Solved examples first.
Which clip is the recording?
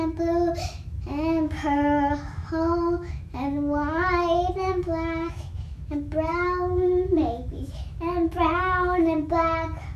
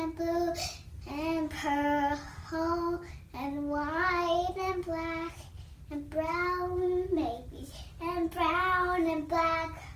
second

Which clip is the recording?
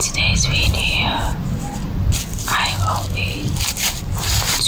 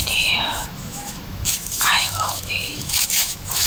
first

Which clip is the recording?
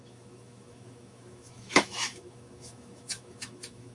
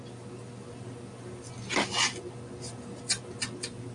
second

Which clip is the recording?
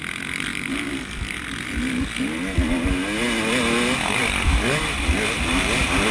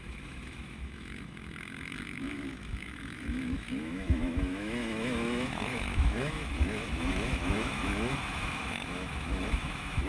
first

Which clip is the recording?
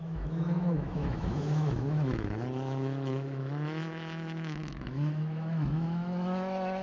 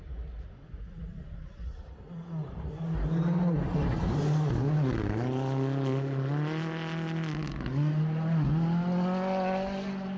second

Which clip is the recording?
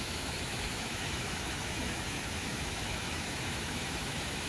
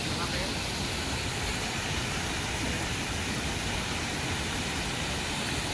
second